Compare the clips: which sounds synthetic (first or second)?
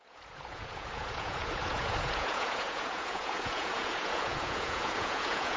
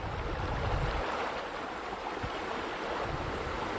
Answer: first